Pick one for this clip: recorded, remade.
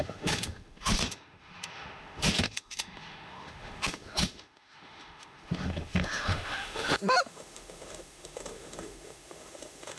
remade